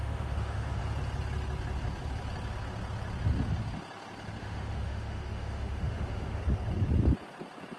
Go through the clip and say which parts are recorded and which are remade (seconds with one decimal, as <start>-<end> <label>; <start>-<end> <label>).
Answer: 0.0-0.8 remade; 0.8-4.4 recorded; 4.4-6.4 remade; 6.4-7.8 recorded